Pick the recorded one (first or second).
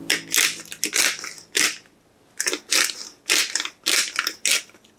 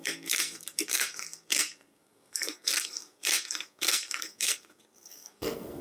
first